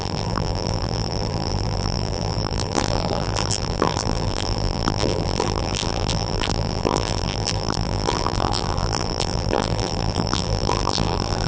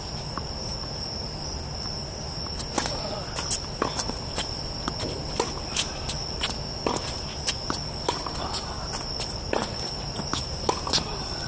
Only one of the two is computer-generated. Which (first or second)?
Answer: first